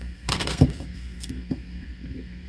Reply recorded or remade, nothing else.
remade